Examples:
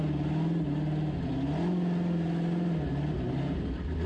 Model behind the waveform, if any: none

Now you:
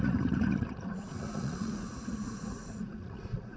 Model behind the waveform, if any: vocoder, Vocos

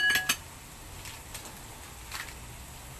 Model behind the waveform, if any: none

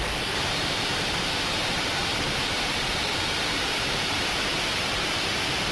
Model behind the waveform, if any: vocoder, BigVGAN v2